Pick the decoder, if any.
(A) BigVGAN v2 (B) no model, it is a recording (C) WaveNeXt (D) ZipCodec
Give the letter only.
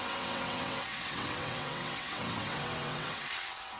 C